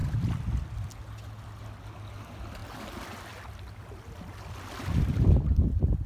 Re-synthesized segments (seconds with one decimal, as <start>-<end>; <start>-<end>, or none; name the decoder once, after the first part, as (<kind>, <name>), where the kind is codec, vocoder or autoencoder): 2.6-6.1 (vocoder, BigVGAN v2)